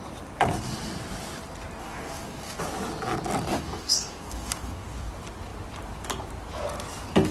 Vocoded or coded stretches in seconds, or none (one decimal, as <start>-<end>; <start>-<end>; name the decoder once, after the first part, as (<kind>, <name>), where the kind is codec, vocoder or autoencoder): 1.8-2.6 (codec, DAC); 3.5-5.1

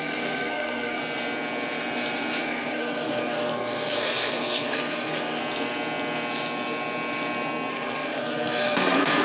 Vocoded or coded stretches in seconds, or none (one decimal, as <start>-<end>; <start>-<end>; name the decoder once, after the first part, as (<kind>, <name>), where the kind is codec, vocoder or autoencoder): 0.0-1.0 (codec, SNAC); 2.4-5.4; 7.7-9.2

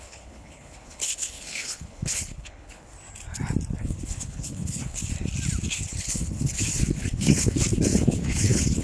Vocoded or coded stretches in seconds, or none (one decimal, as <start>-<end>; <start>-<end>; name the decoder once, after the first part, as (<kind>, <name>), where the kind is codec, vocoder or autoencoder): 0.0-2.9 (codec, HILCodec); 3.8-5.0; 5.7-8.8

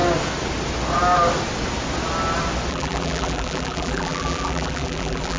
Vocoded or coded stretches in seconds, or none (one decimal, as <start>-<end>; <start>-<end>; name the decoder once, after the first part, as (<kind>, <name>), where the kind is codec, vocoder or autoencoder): 2.7-5.4 (vocoder, BigVGAN v2)

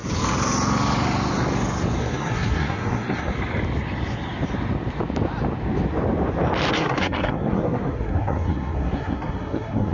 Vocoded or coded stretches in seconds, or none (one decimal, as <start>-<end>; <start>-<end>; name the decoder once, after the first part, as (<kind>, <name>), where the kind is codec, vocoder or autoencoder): 2.0-3.4 (codec, SNAC); 6.7-9.9

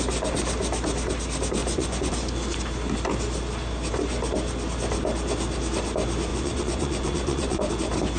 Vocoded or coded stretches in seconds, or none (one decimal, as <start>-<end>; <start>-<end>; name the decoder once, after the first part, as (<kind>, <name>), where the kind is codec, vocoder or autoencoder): 1.6-2.1 (vocoder, Vocos); 6.3-7.7